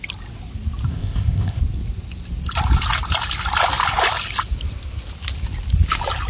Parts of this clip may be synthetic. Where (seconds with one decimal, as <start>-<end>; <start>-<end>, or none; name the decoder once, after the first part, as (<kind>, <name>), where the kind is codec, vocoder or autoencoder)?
0.9-1.6 (codec, ZipCodec)